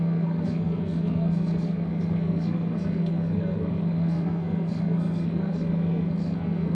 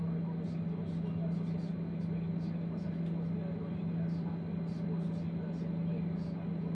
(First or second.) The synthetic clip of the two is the first